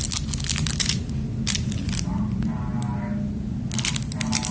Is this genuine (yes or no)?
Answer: yes